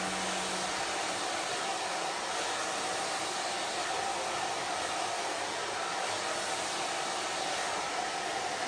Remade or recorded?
recorded